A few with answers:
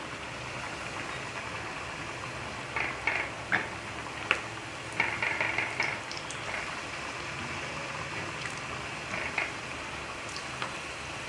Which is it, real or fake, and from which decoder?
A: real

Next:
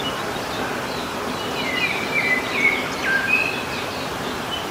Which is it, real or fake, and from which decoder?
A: real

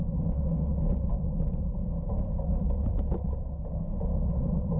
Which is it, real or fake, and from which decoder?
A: real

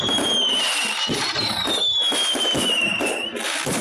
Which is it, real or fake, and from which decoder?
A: real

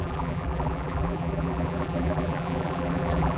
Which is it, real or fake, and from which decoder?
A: fake, vocoder, BigVGAN v2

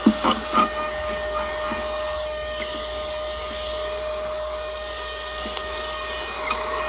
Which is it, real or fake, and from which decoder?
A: fake, codec, DAC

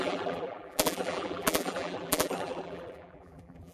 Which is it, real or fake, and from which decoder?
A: fake, vocoder, BigVGAN v2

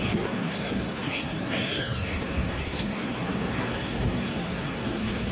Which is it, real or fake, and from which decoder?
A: fake, codec, SNAC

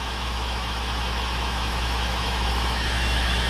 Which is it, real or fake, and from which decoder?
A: fake, autoencoder, DAC-VAE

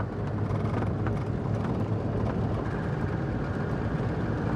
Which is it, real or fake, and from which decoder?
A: real